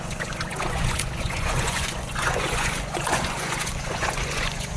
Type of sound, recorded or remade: remade